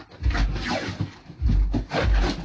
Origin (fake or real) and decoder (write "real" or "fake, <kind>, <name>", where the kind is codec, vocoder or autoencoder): real